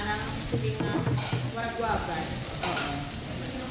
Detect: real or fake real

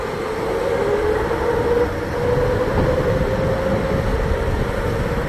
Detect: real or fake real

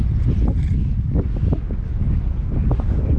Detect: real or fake real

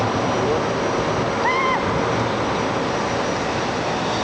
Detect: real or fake real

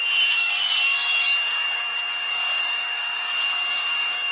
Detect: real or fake fake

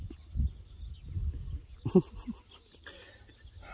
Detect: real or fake real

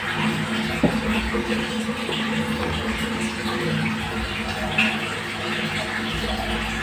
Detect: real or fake real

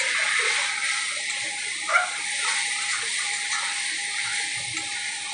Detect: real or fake real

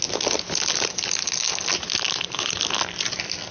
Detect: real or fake real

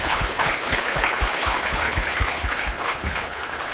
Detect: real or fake fake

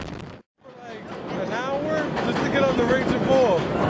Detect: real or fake real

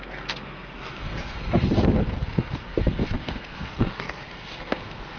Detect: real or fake fake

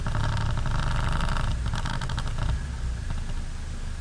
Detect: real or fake real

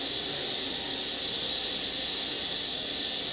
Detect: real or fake real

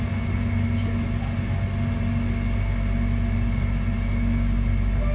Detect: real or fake real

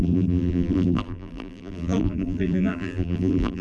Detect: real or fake fake